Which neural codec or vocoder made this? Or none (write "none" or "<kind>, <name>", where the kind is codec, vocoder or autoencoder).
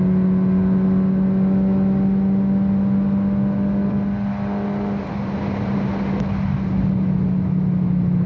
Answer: none